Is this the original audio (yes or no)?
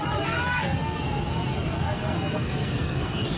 no